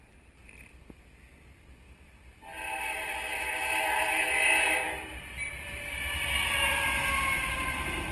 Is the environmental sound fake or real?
real